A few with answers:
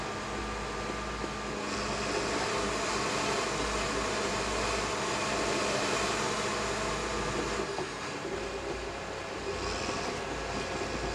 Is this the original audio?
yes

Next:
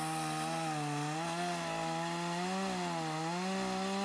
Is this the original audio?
yes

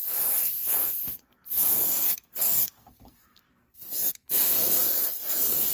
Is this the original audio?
no